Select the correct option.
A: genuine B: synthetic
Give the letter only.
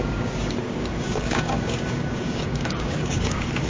B